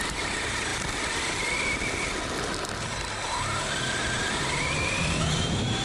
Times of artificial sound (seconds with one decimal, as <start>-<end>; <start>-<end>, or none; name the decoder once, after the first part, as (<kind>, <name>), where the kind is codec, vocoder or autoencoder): 0.0-0.7 (vocoder, BigVGAN v2); 3.8-5.8